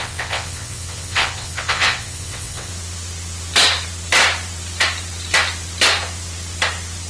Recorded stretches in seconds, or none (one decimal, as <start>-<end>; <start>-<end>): 2.7-7.1